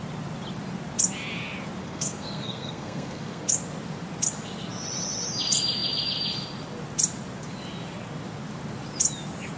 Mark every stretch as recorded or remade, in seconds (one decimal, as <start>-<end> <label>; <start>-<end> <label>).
0.0-1.8 recorded; 1.8-3.4 remade; 3.4-9.6 recorded